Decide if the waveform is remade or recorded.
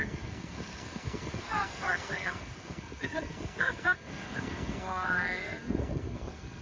remade